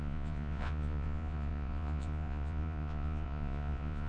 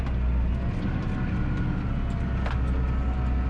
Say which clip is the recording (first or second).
second